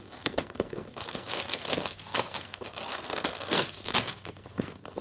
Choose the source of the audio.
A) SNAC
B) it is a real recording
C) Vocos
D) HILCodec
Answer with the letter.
A